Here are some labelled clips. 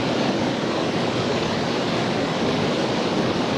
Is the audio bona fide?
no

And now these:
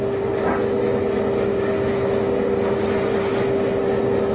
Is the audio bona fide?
yes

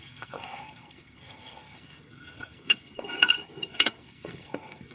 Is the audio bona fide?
no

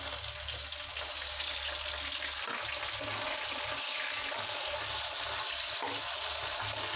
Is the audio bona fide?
yes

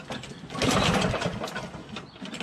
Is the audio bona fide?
yes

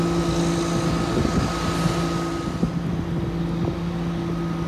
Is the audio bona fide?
yes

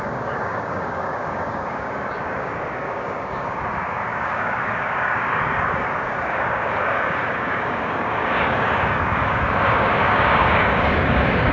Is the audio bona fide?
no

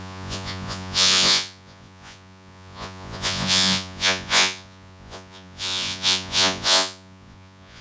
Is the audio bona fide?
no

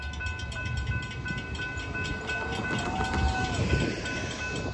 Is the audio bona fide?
yes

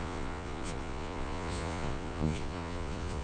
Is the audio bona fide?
no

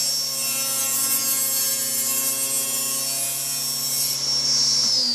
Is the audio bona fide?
yes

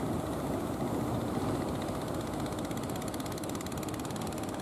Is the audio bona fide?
yes